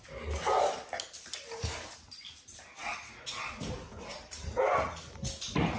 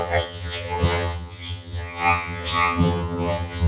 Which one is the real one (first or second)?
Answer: first